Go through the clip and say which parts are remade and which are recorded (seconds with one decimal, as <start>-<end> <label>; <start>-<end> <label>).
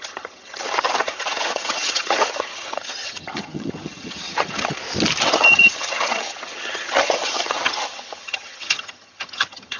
0.0-4.8 remade; 4.8-5.3 recorded; 5.3-9.8 remade